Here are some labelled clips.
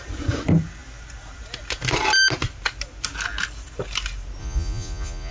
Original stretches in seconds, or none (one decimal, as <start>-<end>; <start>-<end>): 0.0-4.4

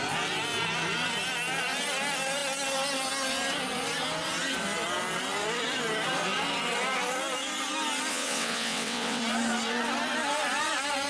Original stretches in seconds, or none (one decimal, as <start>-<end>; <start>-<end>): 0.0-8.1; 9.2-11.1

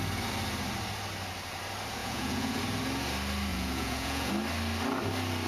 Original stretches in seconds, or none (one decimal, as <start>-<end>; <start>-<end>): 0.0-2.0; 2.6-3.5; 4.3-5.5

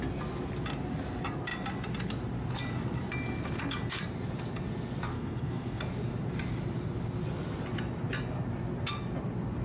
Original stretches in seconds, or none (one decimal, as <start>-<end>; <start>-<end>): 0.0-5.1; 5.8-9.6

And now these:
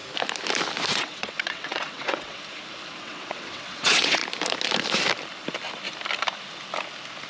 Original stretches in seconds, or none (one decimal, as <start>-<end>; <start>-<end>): 0.0-0.9; 2.4-3.0; 4.2-7.3

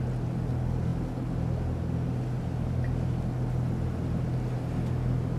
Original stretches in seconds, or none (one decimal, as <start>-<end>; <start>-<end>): 0.0-5.4

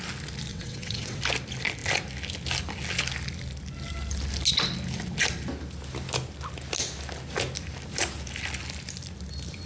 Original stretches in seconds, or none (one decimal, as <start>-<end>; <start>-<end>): 0.0-0.5; 1.2-9.7